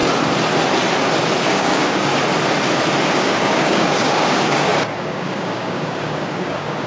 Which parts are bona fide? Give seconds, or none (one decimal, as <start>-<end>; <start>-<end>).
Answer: 0.0-1.4; 2.1-3.2